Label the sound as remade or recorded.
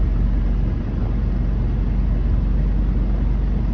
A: recorded